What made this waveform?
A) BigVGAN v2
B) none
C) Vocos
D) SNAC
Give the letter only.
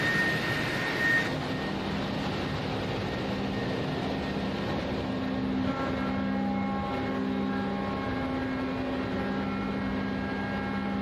B